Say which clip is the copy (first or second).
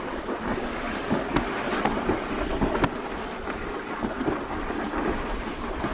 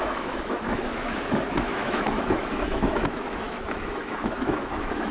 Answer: second